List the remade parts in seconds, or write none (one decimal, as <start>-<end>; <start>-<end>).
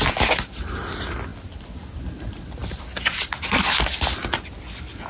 none